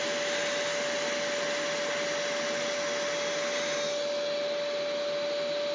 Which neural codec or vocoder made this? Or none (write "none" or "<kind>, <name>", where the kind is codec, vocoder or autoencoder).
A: none